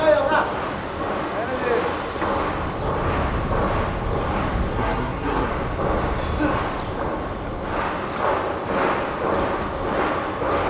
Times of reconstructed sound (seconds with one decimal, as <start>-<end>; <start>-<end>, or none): 4.7-5.5